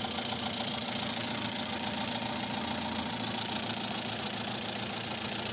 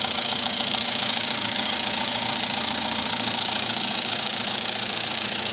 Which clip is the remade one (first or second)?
second